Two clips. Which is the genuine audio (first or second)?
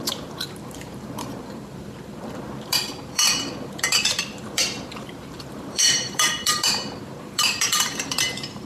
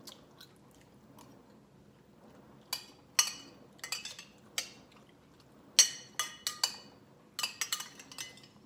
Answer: second